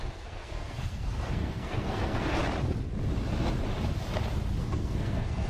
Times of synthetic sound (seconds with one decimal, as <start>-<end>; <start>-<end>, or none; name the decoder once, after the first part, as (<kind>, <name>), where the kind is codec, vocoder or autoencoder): 0.0-2.4 (codec, SNAC); 4.6-5.5